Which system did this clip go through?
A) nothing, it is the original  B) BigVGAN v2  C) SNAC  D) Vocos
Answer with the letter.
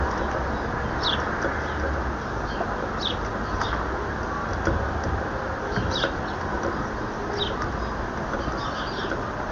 A